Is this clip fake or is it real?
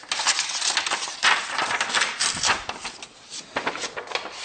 real